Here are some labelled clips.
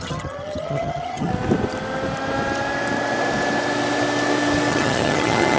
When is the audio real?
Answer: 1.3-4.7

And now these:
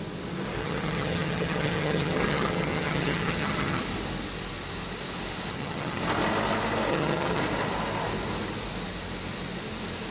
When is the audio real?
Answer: 0.0-0.6; 3.8-5.5; 6.0-6.9; 7.4-10.1

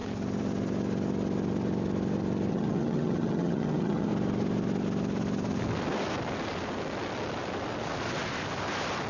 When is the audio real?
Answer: 0.0-2.5; 4.1-9.1

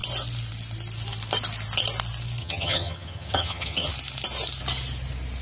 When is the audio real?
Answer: 0.0-2.4; 3.9-5.4

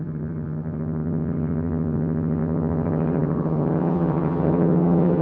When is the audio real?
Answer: none

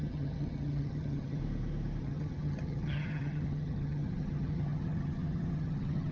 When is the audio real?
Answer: 1.4-2.0

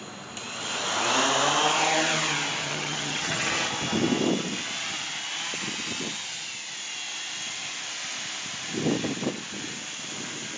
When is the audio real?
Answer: 0.0-2.6; 3.5-10.6

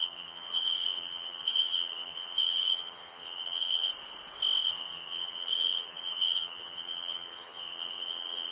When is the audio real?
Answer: 3.9-4.6